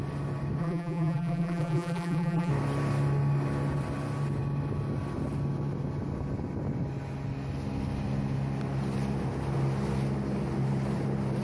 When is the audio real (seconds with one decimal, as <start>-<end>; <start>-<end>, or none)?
0.0-0.6; 2.5-11.4